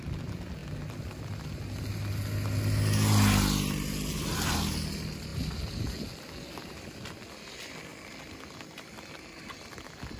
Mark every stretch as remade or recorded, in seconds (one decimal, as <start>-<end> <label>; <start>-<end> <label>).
0.0-10.2 recorded